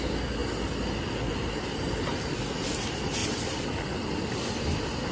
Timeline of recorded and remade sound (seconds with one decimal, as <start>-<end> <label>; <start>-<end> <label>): 0.0-5.1 recorded